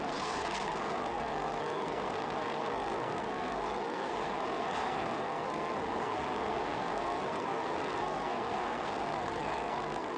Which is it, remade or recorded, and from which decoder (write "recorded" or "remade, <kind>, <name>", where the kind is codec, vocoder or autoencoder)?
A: remade, codec, SNAC